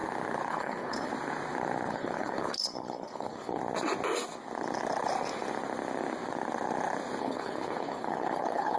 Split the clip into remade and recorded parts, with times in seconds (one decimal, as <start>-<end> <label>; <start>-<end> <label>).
0.0-0.5 recorded; 0.5-1.1 remade; 1.1-1.9 recorded; 1.9-3.6 remade; 3.6-7.2 recorded; 7.2-8.8 remade